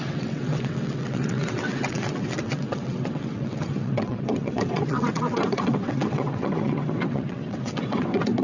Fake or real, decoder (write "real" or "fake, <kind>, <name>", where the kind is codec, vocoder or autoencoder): fake, vocoder, WaveNeXt